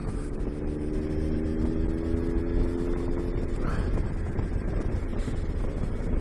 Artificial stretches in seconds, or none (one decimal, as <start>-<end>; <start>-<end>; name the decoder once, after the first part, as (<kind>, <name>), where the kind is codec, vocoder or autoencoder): none